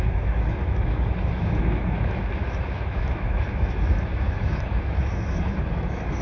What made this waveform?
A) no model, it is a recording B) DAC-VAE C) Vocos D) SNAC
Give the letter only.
B